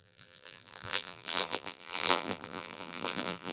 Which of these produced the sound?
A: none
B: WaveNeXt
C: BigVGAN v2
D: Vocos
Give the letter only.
C